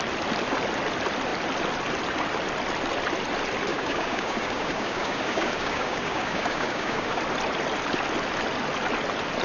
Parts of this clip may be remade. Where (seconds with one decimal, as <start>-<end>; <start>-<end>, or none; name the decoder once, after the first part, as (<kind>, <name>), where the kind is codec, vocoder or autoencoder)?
3.7-7.2 (codec, DAC)